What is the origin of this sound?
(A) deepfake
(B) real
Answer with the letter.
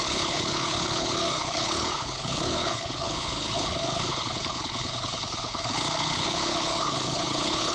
A